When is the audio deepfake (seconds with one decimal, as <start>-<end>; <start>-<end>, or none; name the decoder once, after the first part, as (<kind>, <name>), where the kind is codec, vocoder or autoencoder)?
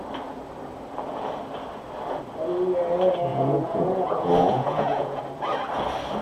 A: 3.3-5.2 (vocoder, Vocos)